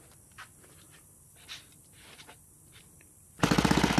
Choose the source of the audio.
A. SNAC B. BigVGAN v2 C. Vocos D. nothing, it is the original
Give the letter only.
D